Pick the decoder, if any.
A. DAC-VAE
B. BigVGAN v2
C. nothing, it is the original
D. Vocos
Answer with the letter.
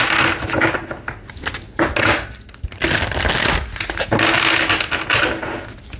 C